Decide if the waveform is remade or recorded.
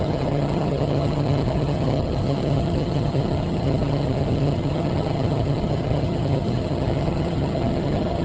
remade